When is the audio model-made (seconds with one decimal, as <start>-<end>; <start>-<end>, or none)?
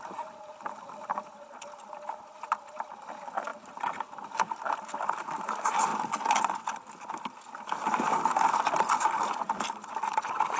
none